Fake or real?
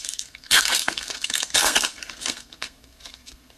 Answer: fake